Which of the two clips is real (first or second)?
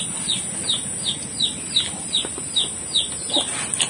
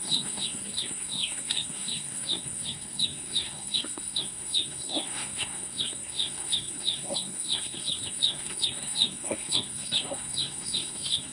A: first